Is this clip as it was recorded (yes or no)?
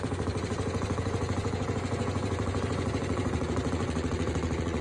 no